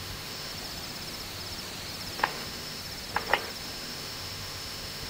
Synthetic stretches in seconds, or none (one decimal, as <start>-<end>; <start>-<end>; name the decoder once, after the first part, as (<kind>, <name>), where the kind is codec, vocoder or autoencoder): 0.0-0.5 (autoencoder, DAC-VAE); 2.2-2.8; 3.6-5.1